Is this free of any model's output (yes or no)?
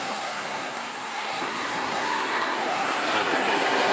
no